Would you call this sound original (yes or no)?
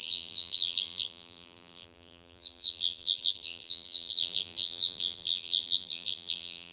no